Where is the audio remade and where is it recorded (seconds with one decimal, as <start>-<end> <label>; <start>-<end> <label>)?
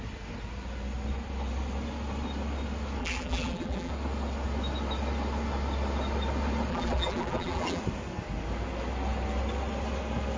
0.0-3.0 recorded; 3.0-3.9 remade; 3.9-6.7 recorded; 6.7-7.8 remade; 7.8-10.4 recorded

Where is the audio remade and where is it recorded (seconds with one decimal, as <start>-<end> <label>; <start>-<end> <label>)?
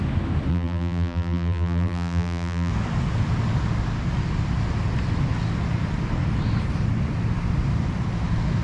0.0-0.5 recorded; 0.5-2.7 remade; 2.7-8.6 recorded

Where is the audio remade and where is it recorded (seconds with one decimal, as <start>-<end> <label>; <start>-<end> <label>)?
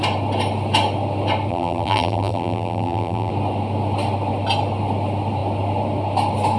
0.0-1.5 recorded; 1.5-3.3 remade; 3.3-6.6 recorded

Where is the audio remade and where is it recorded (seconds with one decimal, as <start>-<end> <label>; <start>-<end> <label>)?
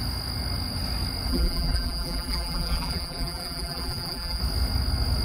0.0-1.3 recorded; 1.3-4.4 remade; 4.4-5.2 recorded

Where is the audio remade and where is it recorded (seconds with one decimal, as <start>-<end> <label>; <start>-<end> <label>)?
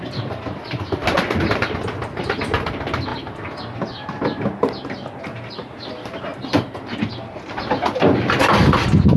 0.0-3.1 remade; 3.1-5.2 recorded; 5.2-9.2 remade